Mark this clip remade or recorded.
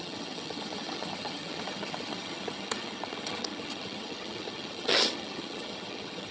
remade